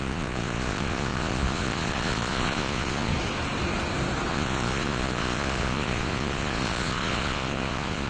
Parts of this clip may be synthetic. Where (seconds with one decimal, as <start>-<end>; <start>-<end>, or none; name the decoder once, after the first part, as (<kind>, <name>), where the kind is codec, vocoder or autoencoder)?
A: 0.0-3.1 (vocoder, Vocos); 4.3-8.1